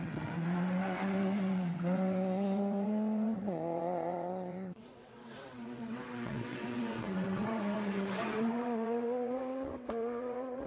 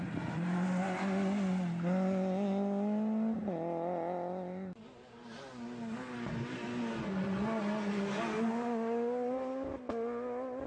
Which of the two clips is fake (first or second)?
first